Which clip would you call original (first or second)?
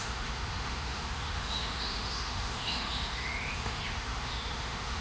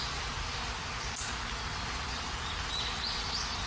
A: second